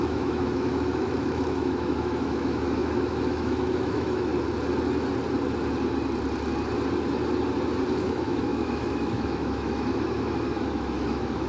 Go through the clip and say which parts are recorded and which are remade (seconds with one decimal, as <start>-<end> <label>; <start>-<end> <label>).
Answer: 0.0-4.3 remade; 4.3-8.0 recorded; 8.0-11.5 remade